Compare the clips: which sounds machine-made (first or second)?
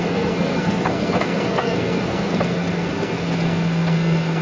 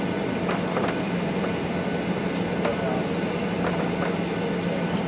first